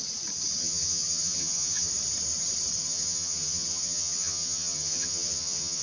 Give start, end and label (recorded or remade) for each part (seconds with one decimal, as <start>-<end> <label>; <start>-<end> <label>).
0.0-0.6 recorded; 0.6-1.9 remade; 1.9-2.8 recorded; 2.8-5.8 remade